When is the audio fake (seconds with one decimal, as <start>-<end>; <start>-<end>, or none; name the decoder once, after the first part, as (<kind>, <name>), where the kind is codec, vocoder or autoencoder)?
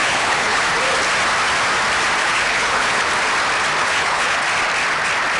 0.0-0.6 (codec, HILCodec); 2.2-3.1; 3.8-4.4